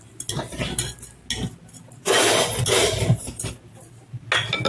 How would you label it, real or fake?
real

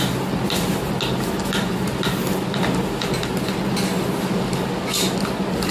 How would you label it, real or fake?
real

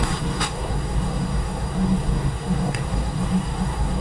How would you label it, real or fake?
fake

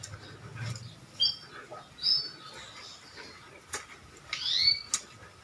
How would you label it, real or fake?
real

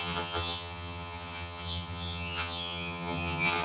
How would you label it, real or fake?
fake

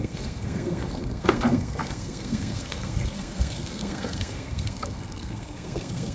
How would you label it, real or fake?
fake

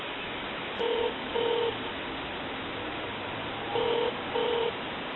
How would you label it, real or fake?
fake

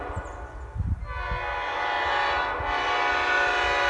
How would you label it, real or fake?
real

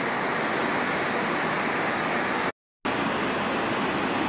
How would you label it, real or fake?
real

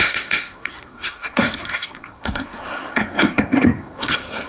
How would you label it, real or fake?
fake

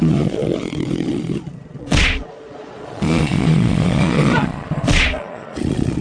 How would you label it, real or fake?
fake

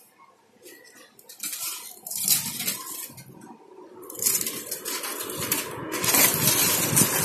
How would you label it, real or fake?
real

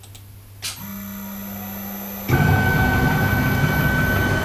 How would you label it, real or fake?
real